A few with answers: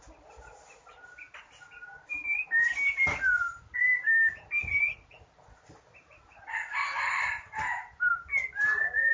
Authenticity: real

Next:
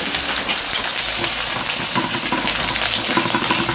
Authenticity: real